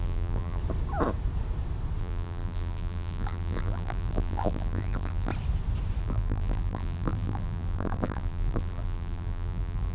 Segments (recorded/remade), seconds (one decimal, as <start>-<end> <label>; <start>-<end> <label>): 0.0-0.6 remade; 0.6-2.0 recorded; 2.0-5.3 remade; 5.3-6.0 recorded; 6.0-9.9 remade